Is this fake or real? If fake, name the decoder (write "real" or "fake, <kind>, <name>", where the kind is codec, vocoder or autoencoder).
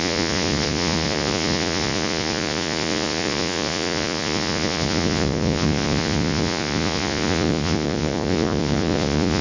fake, vocoder, Vocos